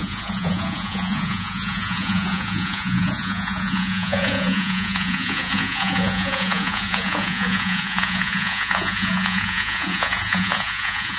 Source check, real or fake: fake